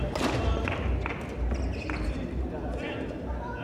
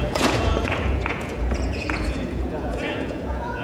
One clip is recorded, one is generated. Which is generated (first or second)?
second